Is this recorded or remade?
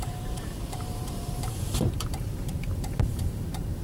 remade